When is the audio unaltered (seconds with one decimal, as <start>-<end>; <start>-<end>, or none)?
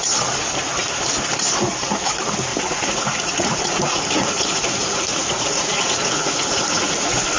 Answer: 0.0-2.5; 6.9-7.4